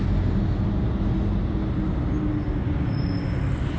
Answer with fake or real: real